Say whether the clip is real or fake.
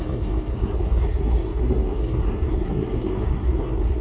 fake